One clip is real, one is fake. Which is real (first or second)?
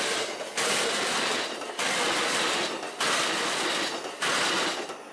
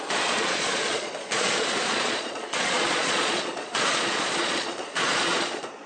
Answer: first